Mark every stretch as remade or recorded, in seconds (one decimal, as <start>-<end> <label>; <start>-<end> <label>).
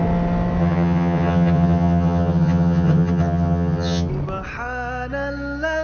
0.0-0.6 recorded; 0.6-4.1 remade; 4.1-5.8 recorded